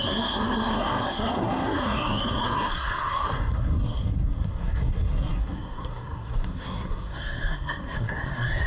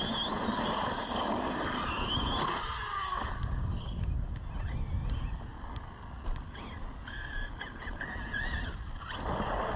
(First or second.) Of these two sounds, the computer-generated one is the first